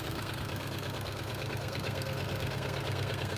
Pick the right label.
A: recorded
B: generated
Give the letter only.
B